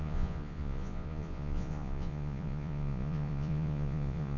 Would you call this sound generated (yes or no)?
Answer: yes